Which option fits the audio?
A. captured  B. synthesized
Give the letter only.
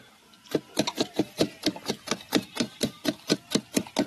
B